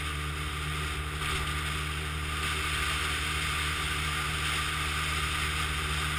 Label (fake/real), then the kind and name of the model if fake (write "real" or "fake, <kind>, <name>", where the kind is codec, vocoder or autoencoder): real